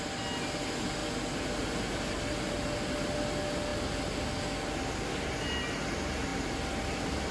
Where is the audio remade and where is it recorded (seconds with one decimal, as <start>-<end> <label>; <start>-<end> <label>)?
0.0-7.3 recorded